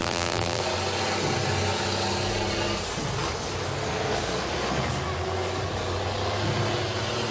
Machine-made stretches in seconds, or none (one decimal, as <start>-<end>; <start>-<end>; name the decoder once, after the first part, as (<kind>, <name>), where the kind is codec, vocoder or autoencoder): 0.0-0.6 (vocoder, BigVGAN v2)